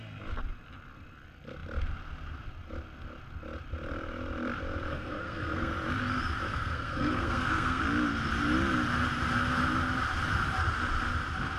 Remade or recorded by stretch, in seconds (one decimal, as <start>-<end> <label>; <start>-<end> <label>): 0.0-4.9 recorded; 4.9-5.7 remade; 5.7-6.5 recorded; 6.5-7.8 remade; 7.8-11.6 recorded